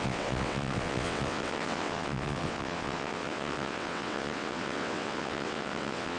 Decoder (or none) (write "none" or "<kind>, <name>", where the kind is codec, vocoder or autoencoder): vocoder, WaveNeXt